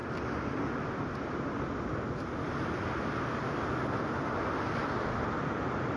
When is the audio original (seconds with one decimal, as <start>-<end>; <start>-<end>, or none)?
0.0-6.0